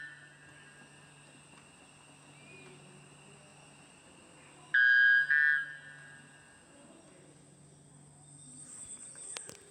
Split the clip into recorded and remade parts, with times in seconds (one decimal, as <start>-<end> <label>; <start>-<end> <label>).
0.0-9.7 recorded

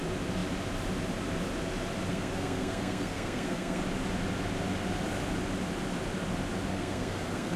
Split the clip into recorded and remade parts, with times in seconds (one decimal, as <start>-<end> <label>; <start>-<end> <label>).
0.0-2.1 recorded; 2.1-3.8 remade; 3.8-6.7 recorded; 6.7-7.6 remade